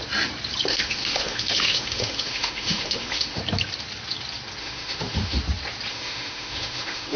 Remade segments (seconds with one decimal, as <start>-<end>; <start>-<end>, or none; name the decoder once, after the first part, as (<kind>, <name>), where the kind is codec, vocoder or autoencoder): 0.7-3.4 (autoencoder, DAC-VAE); 4.6-5.4; 5.9-7.2